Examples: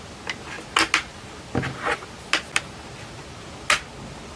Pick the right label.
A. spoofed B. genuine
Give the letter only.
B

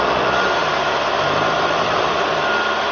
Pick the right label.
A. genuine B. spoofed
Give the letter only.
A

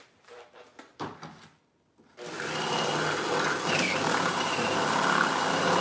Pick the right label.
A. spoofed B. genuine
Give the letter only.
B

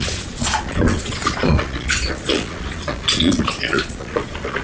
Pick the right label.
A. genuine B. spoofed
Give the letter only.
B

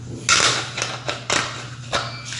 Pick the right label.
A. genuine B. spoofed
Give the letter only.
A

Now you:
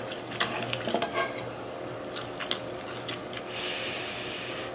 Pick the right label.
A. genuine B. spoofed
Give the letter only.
A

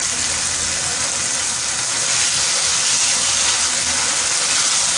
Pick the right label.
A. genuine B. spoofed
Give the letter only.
A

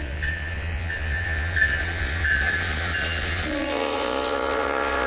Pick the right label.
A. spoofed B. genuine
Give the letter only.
A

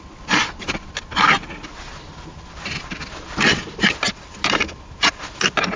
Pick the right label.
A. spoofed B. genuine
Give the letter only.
B